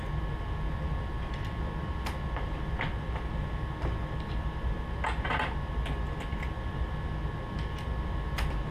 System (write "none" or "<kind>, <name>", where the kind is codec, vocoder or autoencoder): none